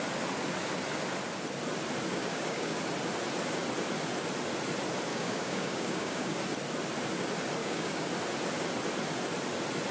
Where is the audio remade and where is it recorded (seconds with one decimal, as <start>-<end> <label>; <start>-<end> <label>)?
0.0-2.2 recorded; 2.2-2.8 remade; 2.8-5.1 recorded; 5.1-6.4 remade; 6.4-7.6 recorded; 7.6-8.1 remade; 8.1-9.9 recorded